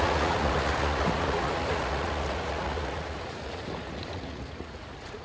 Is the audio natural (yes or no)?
no